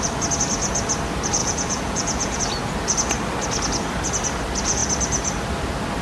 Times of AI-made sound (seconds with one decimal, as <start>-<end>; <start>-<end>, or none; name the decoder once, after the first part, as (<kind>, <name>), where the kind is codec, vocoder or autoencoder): 1.4-2.4 (vocoder, Vocos)